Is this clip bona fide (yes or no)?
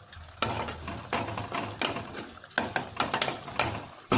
yes